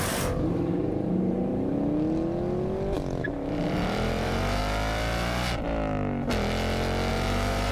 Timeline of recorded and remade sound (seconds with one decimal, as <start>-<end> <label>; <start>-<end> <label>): 0.0-1.5 remade; 1.5-3.2 recorded; 3.2-4.6 remade; 4.6-7.1 recorded; 7.1-7.7 remade